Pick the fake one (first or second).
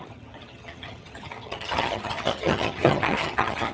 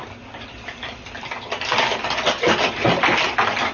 first